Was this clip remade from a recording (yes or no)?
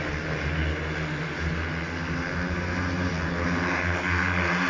no